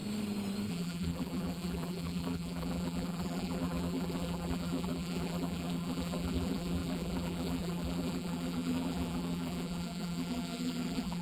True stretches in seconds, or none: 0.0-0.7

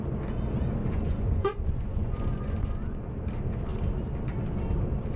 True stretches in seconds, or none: 0.0-0.8; 3.0-5.2

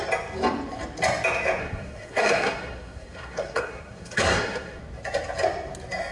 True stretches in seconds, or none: 0.0-1.6; 4.8-6.1

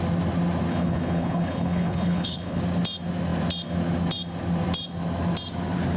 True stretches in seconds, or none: 0.0-0.7; 2.6-6.0